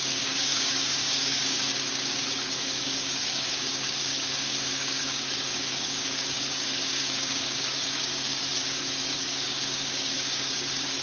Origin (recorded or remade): remade